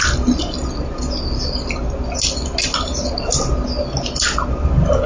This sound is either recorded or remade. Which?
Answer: recorded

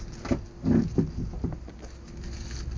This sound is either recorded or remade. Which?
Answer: recorded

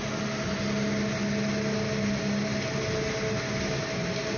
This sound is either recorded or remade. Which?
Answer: recorded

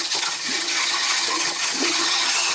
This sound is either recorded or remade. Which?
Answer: remade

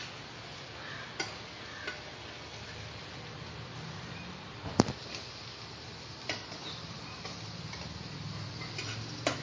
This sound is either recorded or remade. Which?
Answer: recorded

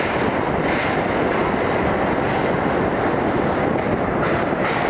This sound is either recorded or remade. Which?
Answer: recorded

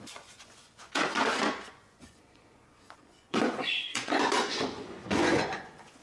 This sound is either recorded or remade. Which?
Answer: remade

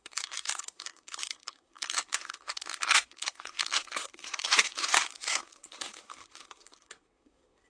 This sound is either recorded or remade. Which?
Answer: remade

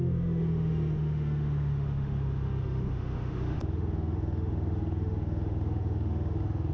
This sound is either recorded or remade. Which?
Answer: remade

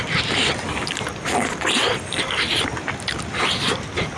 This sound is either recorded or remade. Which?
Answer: recorded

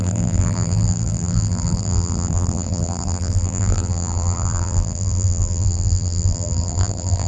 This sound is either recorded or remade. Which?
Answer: remade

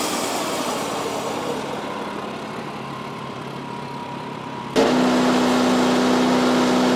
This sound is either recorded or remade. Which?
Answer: recorded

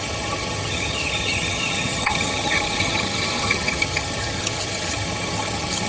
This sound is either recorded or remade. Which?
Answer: remade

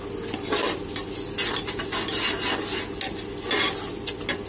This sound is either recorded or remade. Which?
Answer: recorded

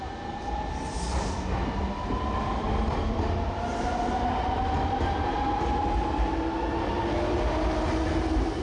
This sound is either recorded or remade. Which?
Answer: recorded